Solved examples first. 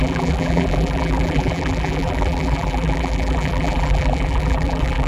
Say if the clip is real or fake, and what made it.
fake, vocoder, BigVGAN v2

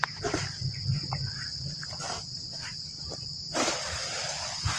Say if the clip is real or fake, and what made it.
fake, vocoder, BigVGAN v2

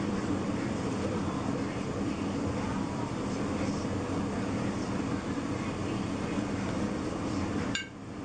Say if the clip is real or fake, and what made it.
fake, vocoder, BigVGAN v2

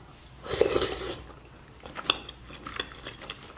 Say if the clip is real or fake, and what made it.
real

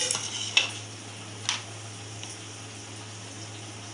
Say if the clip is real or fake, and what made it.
real